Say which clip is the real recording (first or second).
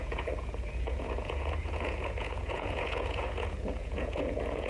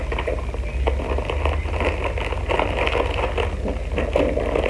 second